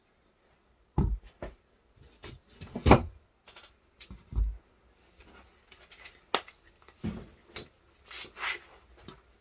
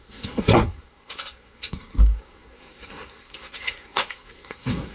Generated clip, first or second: second